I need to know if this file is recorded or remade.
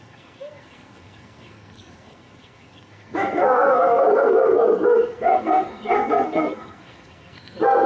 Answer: remade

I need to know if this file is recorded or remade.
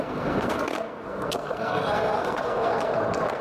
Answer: remade